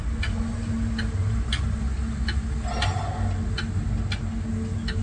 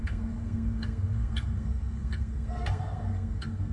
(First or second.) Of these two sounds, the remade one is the second